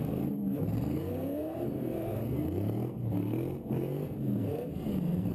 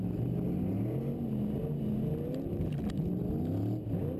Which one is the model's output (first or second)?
first